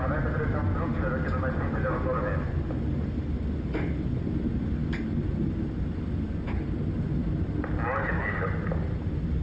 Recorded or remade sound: recorded